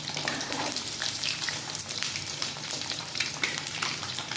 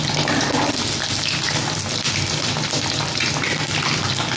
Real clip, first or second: second